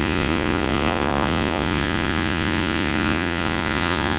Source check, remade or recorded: remade